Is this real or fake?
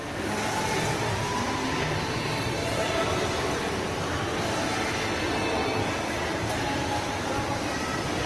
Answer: real